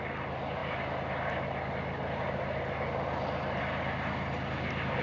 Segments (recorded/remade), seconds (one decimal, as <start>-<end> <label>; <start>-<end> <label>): 0.0-5.0 recorded